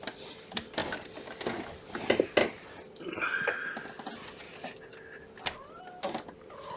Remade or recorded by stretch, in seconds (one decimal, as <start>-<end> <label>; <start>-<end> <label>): 0.0-6.8 recorded